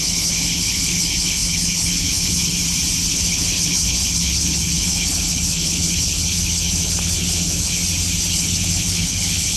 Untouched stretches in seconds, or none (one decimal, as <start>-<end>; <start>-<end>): 2.6-3.1; 7.8-8.3